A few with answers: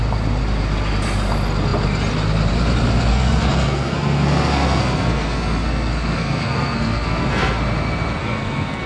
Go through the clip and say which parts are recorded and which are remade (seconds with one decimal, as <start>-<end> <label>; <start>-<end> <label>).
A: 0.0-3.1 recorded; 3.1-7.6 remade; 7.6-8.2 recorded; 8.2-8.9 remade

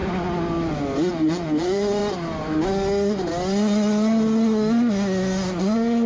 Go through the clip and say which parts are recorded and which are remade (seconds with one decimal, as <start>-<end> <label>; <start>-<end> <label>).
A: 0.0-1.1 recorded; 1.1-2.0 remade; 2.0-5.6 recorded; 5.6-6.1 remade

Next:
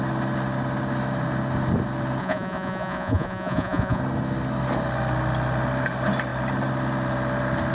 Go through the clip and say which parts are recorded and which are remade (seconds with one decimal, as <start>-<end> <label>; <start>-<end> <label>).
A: 0.0-2.2 recorded; 2.2-4.0 remade; 4.0-7.7 recorded